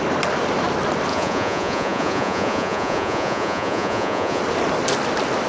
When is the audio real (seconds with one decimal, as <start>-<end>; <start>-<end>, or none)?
0.0-1.1; 4.4-5.5